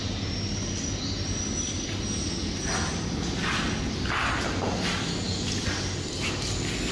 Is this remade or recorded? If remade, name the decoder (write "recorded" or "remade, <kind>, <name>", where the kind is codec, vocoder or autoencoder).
recorded